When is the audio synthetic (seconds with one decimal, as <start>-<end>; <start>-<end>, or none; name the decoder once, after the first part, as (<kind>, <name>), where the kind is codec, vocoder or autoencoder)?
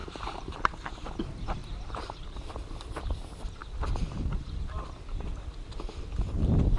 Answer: 0.0-0.6 (vocoder, BigVGAN v2); 1.6-2.5